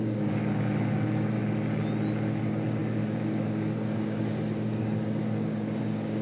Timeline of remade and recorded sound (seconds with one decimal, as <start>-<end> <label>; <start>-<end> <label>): 0.0-0.4 remade; 0.4-0.9 recorded; 0.9-1.4 remade; 1.4-2.4 recorded; 2.4-6.2 remade